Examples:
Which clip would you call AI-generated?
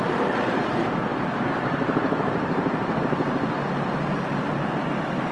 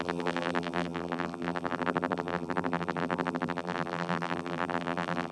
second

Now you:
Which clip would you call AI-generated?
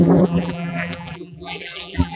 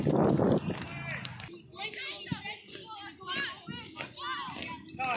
first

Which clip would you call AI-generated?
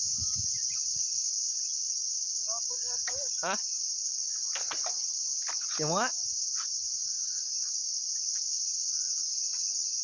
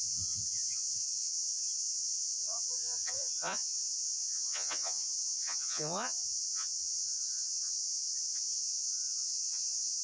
second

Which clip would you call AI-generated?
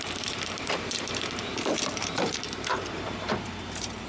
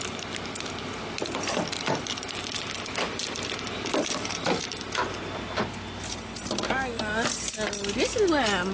first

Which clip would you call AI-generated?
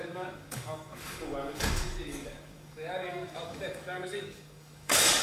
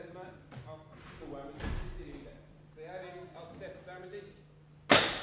first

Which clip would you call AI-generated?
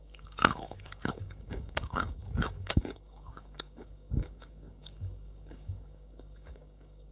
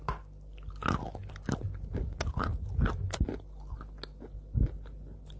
first